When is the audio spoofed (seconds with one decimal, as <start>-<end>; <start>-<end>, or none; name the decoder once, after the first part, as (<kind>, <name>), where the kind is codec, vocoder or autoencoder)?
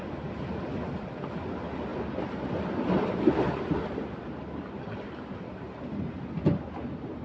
none